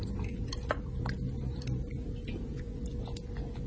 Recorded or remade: recorded